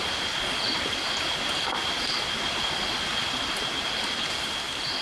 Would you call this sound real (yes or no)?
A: yes